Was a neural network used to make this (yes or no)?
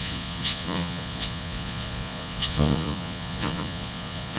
yes